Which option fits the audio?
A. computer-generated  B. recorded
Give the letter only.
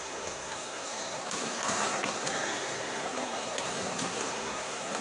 A